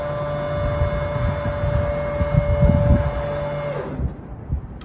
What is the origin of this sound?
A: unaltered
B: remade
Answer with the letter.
A